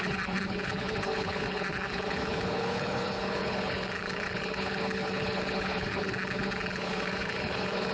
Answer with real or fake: fake